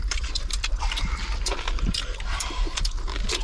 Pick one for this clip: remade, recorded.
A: remade